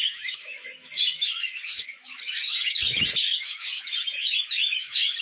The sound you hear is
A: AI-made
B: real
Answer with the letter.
A